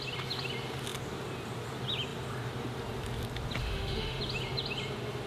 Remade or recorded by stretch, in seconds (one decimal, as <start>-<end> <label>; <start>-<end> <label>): 0.0-3.6 recorded; 3.6-4.2 remade; 4.2-5.3 recorded